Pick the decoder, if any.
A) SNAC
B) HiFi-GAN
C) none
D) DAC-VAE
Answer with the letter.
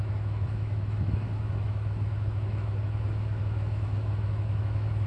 D